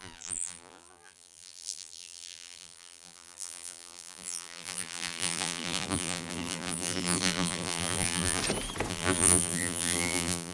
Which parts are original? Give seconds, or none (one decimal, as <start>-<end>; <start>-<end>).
8.4-8.9